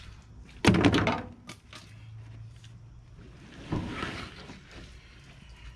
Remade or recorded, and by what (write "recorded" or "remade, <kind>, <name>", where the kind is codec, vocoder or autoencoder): recorded